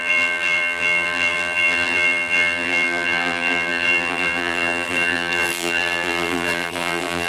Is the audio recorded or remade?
remade